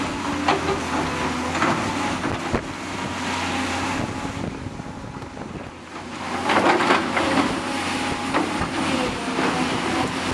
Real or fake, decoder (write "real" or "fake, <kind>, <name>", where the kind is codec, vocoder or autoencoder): real